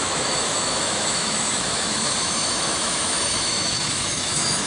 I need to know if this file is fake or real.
fake